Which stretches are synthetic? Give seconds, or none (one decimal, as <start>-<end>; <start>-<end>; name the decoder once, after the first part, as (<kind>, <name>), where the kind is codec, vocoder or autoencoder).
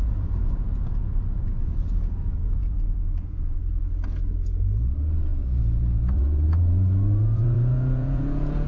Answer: 0.0-3.5 (vocoder, Vocos); 5.3-8.7